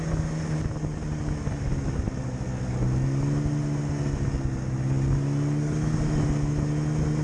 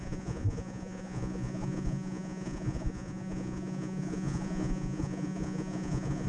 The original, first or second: first